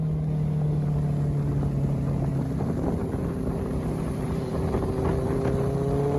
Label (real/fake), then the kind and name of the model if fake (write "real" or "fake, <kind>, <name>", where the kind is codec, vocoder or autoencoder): real